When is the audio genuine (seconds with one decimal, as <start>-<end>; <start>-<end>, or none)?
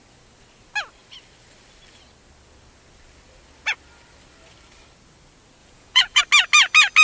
0.0-5.6; 6.2-7.0